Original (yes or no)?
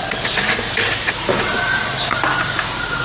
yes